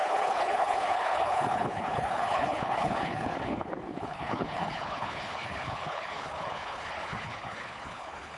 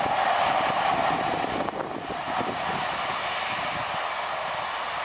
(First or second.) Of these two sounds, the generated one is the first